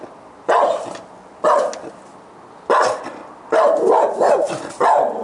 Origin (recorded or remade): recorded